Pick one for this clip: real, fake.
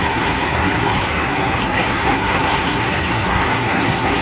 fake